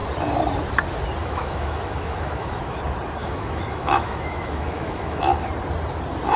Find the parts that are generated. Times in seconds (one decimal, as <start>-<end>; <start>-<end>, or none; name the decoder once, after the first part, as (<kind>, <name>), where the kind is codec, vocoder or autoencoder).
1.2-2.8 (autoencoder, DAC-VAE); 3.2-5.5